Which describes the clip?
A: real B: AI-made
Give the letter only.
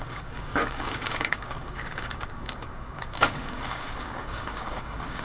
B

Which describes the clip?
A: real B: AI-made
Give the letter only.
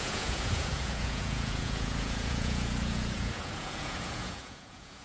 B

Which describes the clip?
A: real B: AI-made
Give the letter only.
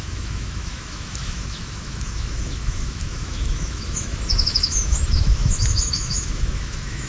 B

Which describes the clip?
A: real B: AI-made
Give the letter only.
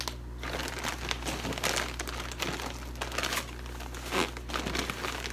A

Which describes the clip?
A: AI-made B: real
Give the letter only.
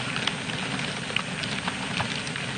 B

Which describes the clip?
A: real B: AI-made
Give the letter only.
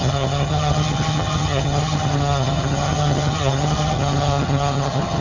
B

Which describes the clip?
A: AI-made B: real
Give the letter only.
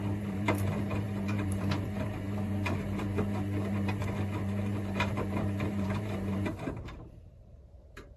A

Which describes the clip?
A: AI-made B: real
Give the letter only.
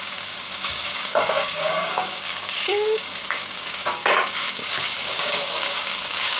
A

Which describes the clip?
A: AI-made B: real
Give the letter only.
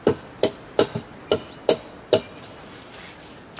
B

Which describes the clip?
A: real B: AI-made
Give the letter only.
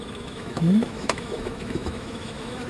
B